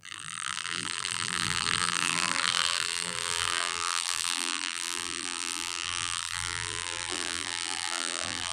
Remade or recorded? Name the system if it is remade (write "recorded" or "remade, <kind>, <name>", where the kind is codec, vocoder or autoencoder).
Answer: remade, vocoder, BigVGAN v2